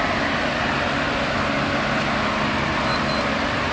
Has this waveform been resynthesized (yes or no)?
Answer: no